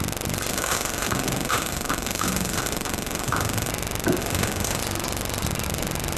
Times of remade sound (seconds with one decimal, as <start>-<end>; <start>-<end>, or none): 0.5-3.7; 4.2-4.8